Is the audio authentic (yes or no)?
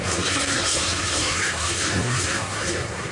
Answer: no